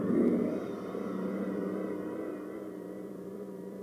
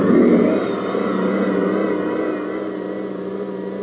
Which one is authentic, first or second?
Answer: second